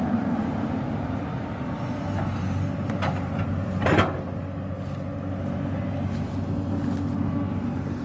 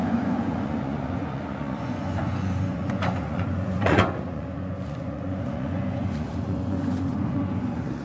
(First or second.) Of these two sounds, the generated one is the second